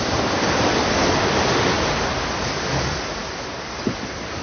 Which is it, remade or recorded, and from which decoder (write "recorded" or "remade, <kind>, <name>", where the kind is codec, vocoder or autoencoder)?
recorded